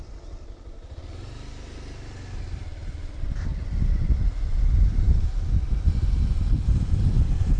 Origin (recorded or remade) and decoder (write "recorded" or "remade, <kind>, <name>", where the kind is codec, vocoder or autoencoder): recorded